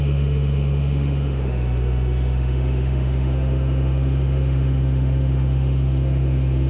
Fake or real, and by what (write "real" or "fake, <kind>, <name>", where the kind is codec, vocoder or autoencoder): fake, autoencoder, DAC-VAE